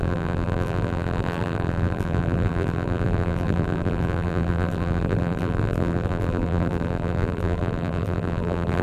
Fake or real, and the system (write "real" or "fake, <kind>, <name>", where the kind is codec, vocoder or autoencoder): fake, vocoder, BigVGAN v2